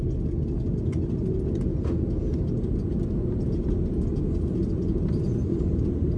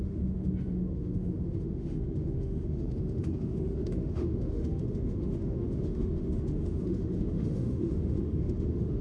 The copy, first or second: second